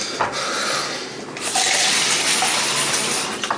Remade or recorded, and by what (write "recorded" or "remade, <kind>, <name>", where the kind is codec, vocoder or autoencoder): recorded